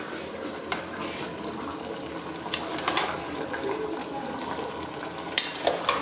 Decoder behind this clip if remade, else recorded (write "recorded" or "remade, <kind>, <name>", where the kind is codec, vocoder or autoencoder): recorded